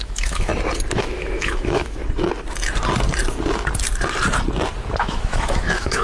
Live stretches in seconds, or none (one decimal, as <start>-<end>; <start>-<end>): 0.5-1.0; 2.0-5.0